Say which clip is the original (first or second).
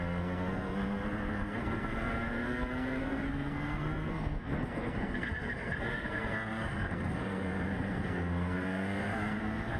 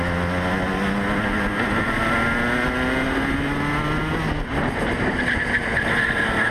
second